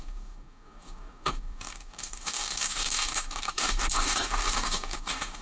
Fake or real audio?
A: fake